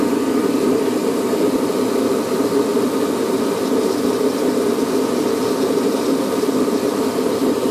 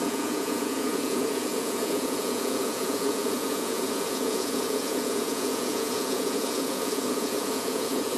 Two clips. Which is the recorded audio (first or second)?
first